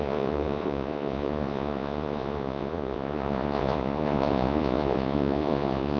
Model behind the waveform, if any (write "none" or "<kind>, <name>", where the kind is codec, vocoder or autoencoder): vocoder, Vocos